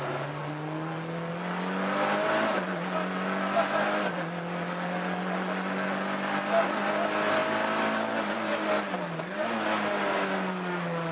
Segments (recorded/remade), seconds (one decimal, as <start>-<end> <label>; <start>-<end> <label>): 0.0-11.1 recorded